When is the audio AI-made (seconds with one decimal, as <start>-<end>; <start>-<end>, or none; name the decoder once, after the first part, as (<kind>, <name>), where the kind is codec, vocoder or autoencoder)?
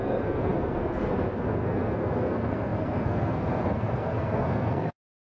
0.0-5.3 (codec, SNAC)